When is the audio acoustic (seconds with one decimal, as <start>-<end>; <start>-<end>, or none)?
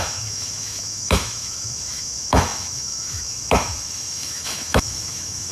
none